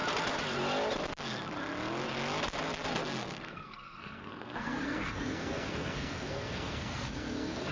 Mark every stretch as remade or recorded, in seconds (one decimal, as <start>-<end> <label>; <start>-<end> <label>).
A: 0.0-2.9 recorded; 2.9-7.7 remade

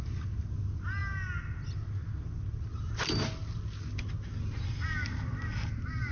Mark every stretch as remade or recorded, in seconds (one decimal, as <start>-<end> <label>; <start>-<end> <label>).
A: 0.0-6.1 recorded

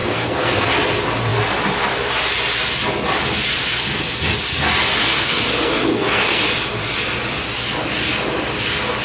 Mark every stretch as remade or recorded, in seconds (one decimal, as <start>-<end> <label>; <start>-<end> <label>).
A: 0.0-0.7 remade; 0.7-5.0 recorded; 5.0-6.4 remade; 6.4-9.0 recorded

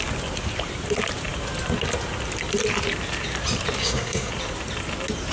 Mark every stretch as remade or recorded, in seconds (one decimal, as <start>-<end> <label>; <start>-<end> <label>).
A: 0.0-3.8 recorded; 3.8-4.3 remade; 4.3-5.3 recorded